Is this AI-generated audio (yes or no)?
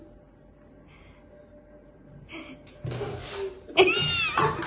no